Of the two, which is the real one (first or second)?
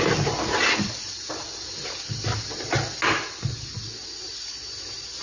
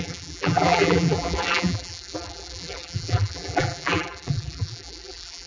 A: first